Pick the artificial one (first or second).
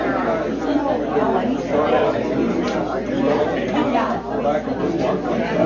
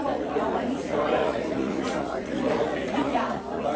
second